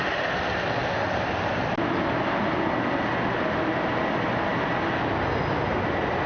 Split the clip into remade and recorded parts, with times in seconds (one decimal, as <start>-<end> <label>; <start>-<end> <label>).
0.0-6.3 recorded